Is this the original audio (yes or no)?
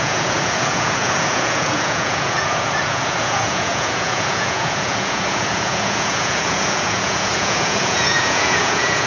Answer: no